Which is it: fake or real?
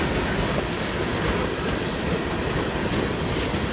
real